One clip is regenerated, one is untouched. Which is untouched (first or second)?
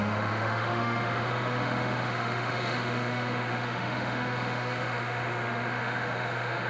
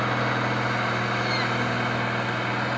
second